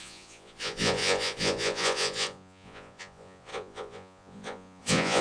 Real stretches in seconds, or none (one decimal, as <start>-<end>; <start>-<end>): none